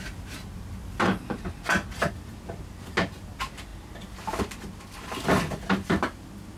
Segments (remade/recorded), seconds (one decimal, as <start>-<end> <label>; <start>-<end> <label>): 0.0-6.6 recorded